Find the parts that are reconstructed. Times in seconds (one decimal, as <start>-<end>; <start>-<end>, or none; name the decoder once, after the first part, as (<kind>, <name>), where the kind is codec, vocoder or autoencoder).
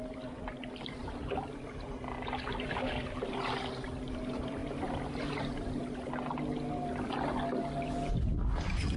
4.6-5.8 (vocoder, BigVGAN v2)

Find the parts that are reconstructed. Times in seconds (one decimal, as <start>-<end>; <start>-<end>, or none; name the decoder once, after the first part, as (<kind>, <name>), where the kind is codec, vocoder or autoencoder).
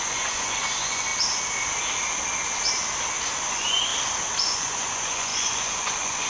0.0-1.1 (vocoder, Vocos); 3.5-3.9; 4.4-6.3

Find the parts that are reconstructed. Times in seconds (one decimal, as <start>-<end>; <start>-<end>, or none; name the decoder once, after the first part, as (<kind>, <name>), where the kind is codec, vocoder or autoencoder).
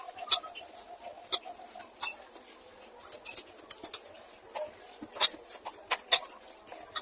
none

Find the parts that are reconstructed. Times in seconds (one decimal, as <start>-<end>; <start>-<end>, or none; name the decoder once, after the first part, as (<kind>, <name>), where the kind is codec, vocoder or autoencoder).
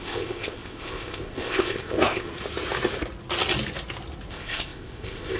0.0-2.3 (codec, ZipCodec); 4.3-5.4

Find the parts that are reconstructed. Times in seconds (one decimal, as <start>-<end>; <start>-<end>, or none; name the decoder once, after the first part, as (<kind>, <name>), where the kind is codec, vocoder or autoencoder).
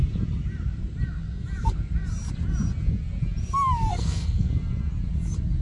3.9-4.5 (codec, SNAC)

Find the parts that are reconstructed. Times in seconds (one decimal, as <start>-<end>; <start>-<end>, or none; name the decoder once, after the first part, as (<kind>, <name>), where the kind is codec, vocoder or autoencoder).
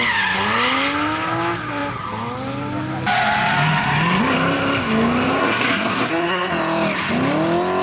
5.4-6.5 (codec, SNAC)